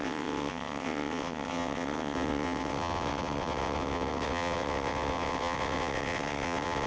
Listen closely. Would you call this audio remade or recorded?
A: remade